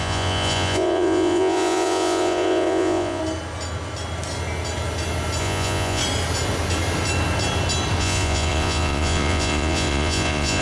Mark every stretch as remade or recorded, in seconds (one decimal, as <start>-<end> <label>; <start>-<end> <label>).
0.0-3.2 remade; 3.2-5.4 recorded; 5.4-6.0 remade; 6.0-8.0 recorded; 8.0-10.6 remade